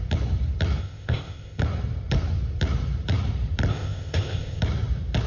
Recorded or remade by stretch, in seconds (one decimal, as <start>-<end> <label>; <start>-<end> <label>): 0.0-0.8 recorded; 0.8-1.6 remade; 1.6-3.7 recorded; 3.7-4.6 remade; 4.6-5.3 recorded